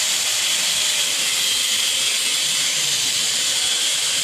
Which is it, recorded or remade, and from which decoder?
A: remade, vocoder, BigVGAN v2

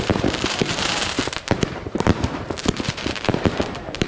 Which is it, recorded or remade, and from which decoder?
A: remade, vocoder, BigVGAN v2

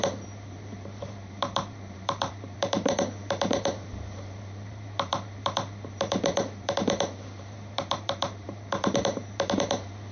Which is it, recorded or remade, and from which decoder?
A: remade, vocoder, BigVGAN v2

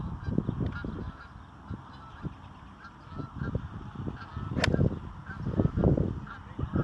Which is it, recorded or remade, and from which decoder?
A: recorded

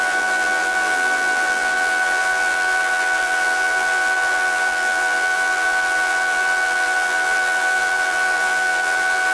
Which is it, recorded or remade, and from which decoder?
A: remade, vocoder, BigVGAN v2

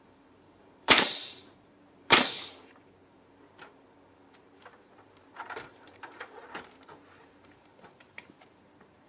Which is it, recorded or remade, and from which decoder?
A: remade, vocoder, BigVGAN v2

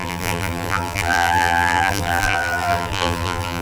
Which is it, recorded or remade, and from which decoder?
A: remade, vocoder, BigVGAN v2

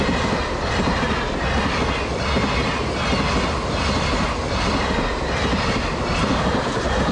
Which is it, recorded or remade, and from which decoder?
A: recorded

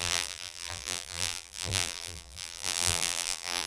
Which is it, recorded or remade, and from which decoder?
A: remade, vocoder, BigVGAN v2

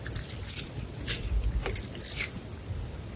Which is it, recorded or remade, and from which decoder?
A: remade, vocoder, BigVGAN v2